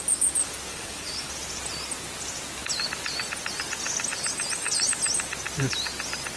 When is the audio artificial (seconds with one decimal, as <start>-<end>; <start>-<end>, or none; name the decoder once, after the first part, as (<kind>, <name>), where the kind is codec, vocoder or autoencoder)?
0.7-1.3 (codec, HILCodec)